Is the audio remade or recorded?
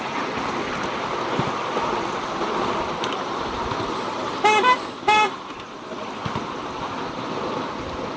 recorded